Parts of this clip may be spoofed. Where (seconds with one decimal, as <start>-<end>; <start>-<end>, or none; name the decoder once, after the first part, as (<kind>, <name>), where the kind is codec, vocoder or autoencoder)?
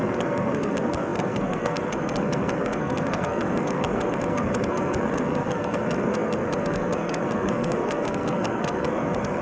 0.0-9.4 (codec, SNAC)